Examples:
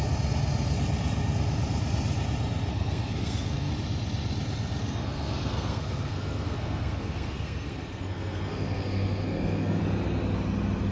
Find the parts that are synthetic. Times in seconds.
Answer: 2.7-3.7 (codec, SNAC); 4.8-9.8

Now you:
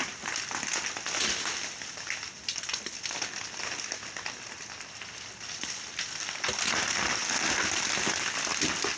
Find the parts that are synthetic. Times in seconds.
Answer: none

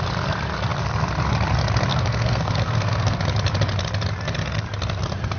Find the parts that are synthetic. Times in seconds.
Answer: 1.9-3.2 (codec, SNAC)

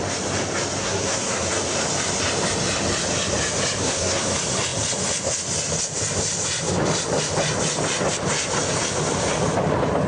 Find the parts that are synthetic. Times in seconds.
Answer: 0.8-1.5 (codec, SNAC); 3.8-4.3

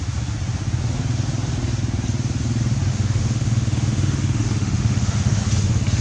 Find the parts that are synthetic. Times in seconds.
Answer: 2.9-5.4 (autoencoder, DAC-VAE)